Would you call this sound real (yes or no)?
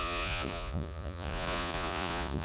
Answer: no